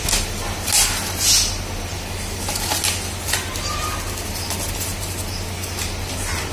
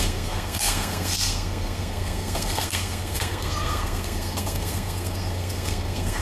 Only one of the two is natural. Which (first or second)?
first